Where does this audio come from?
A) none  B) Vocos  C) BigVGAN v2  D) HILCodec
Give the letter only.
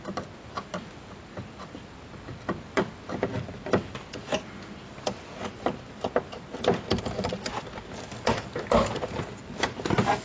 A